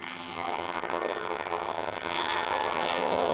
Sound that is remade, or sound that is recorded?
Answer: remade